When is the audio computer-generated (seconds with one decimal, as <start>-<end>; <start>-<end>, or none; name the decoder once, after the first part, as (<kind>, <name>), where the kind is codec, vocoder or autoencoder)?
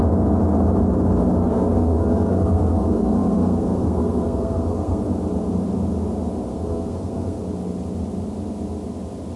1.4-5.0 (codec, SNAC); 6.5-7.4